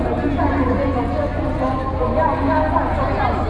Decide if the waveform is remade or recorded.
recorded